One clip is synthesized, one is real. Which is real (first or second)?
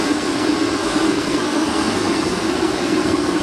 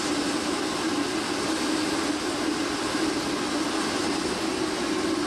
second